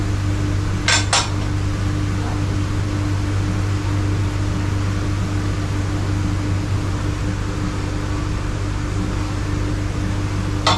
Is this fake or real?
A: real